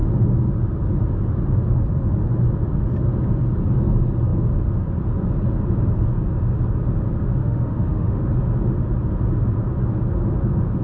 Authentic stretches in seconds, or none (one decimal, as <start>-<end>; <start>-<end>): 0.0-7.4; 8.3-10.8